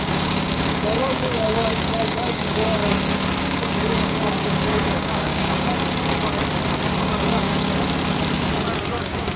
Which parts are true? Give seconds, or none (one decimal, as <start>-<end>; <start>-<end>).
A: 2.8-3.4; 5.7-7.0; 7.5-9.0